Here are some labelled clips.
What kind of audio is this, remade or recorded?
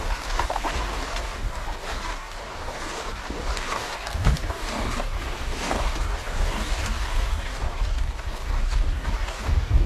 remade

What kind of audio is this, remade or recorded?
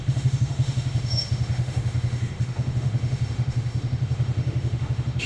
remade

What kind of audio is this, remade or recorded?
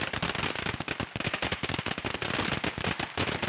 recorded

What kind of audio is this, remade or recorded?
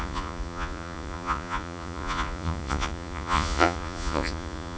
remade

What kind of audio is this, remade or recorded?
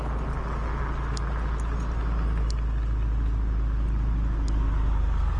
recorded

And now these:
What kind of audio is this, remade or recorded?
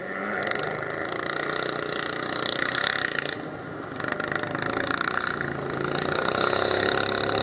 recorded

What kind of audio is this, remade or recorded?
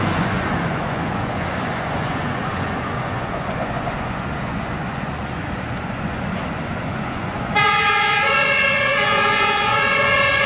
remade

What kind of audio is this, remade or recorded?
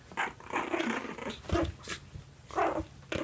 recorded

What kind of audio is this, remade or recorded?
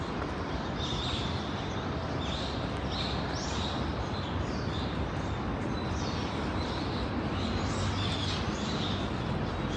recorded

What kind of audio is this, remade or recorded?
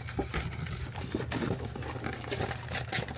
recorded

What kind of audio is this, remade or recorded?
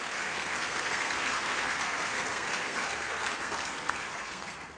remade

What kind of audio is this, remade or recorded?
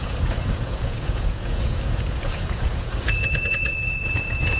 remade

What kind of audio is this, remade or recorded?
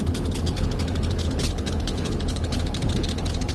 remade